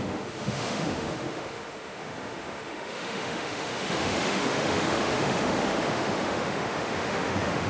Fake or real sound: fake